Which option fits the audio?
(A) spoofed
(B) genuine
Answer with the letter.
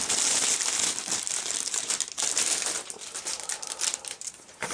A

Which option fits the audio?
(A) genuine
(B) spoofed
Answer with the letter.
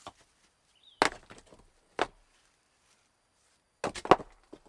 A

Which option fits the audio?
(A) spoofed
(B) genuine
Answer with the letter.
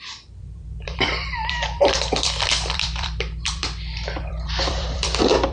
A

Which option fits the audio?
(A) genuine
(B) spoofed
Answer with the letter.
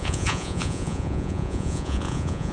B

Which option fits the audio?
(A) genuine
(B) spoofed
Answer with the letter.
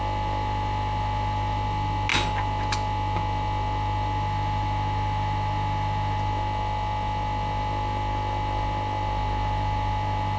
A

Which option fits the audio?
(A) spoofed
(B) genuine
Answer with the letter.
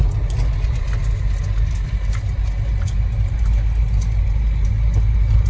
B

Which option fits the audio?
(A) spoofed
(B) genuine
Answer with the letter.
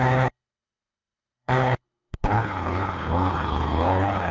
A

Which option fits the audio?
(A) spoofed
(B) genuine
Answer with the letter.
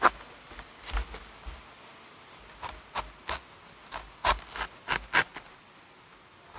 B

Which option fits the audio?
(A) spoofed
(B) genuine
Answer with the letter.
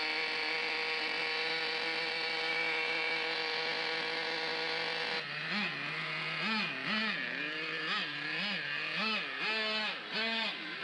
B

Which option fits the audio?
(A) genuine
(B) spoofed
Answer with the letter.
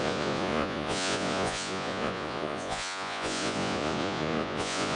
B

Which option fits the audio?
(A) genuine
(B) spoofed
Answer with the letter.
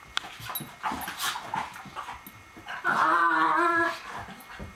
A